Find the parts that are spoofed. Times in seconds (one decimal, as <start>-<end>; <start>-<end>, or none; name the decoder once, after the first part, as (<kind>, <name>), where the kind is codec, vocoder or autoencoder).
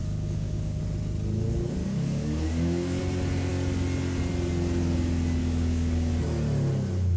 0.0-0.8 (codec, DAC); 1.8-3.0; 5.4-6.1